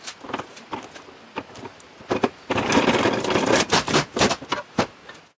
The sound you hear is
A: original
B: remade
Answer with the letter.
A